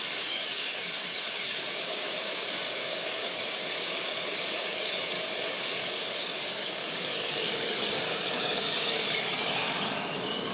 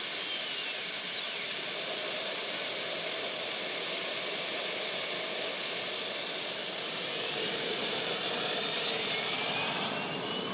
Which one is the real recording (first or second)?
second